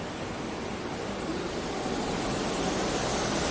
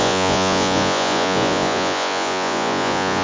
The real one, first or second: first